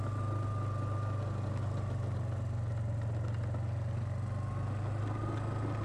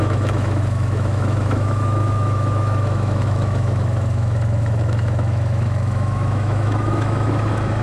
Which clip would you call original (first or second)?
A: first